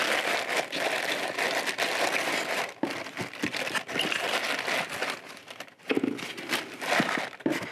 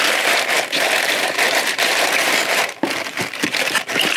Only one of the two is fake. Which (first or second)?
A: second